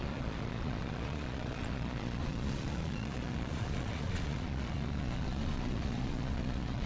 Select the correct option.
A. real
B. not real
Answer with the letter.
B